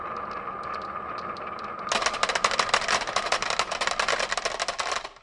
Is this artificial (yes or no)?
no